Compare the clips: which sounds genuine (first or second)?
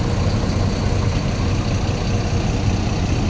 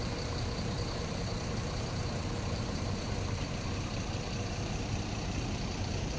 first